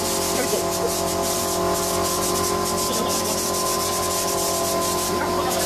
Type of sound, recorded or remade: recorded